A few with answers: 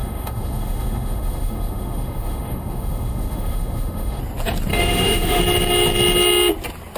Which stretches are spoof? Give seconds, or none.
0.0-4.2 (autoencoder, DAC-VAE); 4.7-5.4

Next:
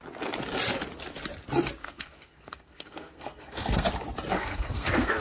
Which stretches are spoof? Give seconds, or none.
1.8-3.9 (codec, SNAC); 4.3-5.2

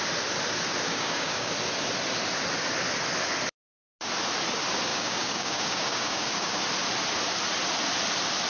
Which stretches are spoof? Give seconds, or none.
0.9-1.5 (codec, DAC); 4.9-6.6

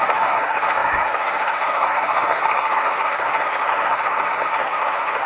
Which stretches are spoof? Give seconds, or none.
0.0-5.3 (codec, SNAC)

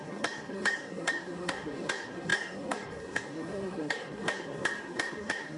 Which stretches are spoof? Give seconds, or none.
0.0-5.6 (codec, SNAC)